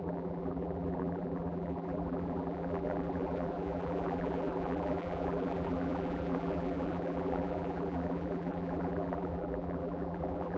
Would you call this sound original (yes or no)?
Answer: no